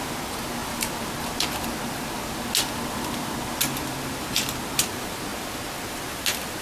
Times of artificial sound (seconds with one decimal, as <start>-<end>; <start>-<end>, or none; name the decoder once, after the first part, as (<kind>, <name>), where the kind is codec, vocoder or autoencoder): none

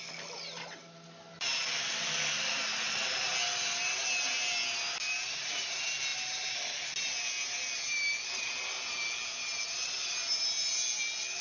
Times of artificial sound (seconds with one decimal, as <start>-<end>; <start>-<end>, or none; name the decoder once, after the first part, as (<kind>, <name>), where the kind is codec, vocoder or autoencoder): none

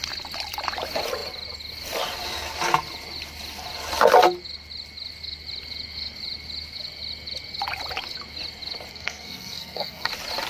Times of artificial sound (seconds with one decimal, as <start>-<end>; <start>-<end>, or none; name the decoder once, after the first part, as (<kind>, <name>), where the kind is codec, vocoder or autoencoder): 8.9-10.1 (codec, SNAC)

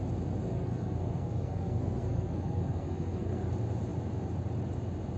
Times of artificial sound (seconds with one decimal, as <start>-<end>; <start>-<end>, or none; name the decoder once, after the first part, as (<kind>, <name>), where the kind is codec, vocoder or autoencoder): 0.4-3.5 (codec, SNAC)

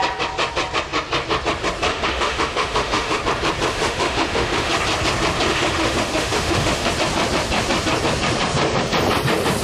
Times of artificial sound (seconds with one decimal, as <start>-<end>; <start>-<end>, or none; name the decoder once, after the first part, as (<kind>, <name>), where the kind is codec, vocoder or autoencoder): 1.9-3.2 (autoencoder, DAC-VAE); 3.7-4.7; 5.5-6.9

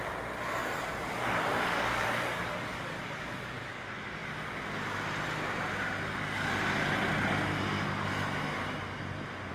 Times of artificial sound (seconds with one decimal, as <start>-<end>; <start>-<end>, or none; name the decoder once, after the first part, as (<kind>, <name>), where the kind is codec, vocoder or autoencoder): 0.6-3.8 (codec, DAC)